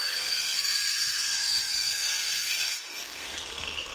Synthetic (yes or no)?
yes